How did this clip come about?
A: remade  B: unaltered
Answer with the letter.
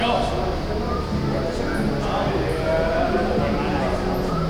B